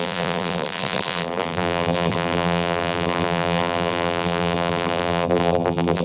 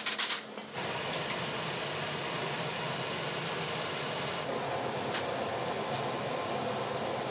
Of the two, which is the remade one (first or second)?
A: first